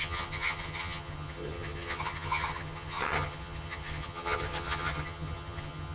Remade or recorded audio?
remade